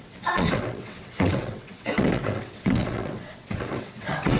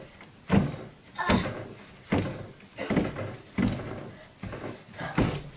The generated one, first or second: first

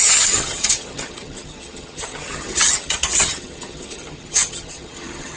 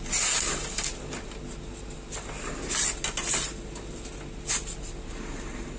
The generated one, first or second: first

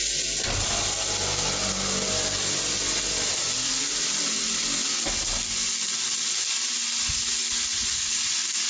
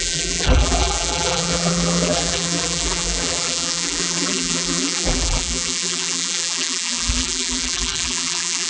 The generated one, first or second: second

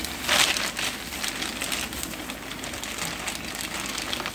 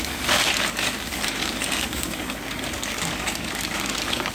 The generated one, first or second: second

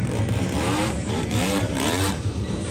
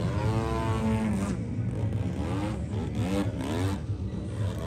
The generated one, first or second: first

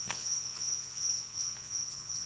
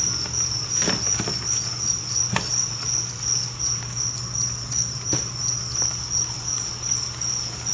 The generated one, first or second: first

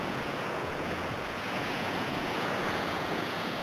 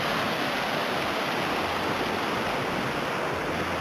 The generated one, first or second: first